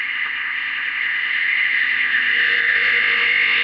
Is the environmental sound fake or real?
fake